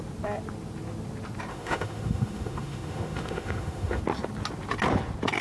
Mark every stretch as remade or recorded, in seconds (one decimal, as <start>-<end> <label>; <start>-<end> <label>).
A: 0.0-1.5 recorded; 1.5-4.0 remade; 4.0-5.4 recorded